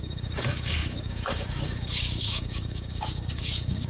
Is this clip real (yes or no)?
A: no